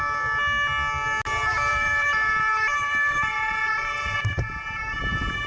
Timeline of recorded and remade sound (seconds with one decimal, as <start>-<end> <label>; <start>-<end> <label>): 0.0-1.7 recorded; 1.7-5.0 remade; 5.0-5.5 recorded